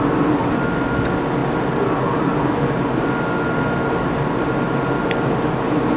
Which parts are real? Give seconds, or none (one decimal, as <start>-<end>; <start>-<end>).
0.0-6.0